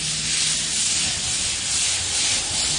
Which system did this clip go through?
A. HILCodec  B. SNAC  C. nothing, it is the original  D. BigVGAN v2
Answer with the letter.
C